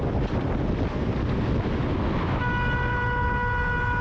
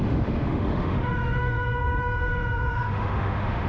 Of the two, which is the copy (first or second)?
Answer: second